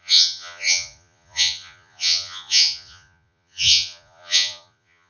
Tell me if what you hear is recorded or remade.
remade